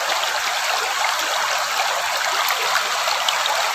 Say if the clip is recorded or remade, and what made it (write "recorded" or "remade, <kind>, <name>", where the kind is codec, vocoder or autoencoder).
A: recorded